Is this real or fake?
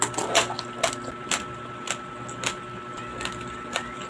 real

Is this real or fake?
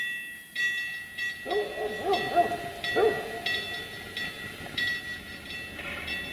real